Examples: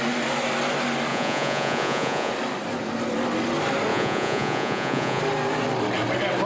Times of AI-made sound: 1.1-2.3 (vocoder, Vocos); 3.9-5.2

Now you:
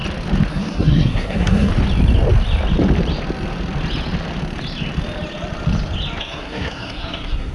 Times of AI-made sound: 0.5-1.7 (codec, SNAC); 6.2-7.5

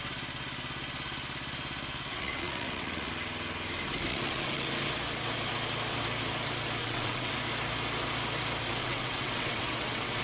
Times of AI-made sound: 2.1-3.1 (vocoder, WaveNeXt); 4.1-4.7; 6.8-7.3; 8.8-10.2

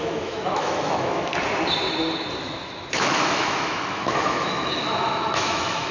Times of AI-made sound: 0.0-1.3 (autoencoder, DAC-VAE); 2.4-5.9